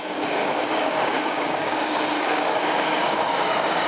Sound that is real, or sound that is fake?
fake